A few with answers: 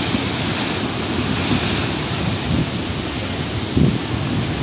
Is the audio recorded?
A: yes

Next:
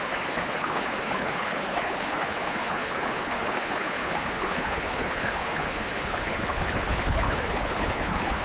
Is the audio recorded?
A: no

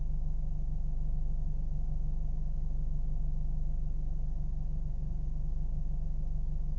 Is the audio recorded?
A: yes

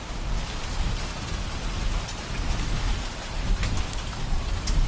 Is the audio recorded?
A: yes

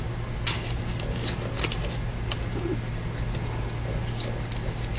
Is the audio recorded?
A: yes